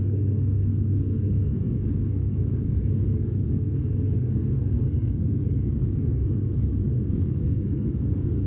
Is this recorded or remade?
remade